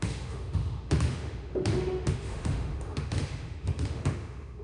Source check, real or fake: fake